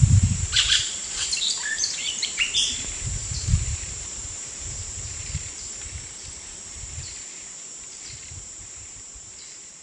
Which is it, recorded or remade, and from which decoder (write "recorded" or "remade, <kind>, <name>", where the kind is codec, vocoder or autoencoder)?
remade, vocoder, BigVGAN v2